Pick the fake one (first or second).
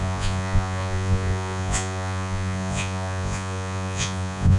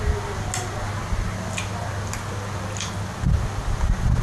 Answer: first